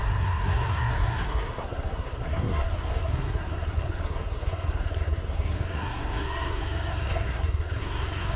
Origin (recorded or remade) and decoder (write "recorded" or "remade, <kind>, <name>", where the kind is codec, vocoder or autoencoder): remade, codec, SNAC